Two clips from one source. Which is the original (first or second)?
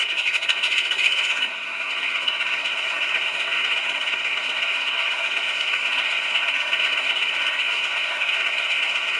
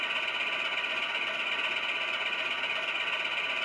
second